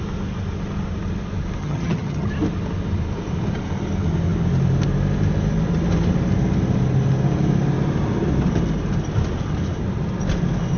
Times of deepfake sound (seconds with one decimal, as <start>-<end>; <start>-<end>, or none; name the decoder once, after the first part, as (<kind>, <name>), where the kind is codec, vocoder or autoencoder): 1.6-2.3 (vocoder, HiFi-GAN)